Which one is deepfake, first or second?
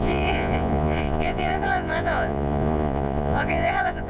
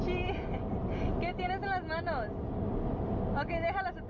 first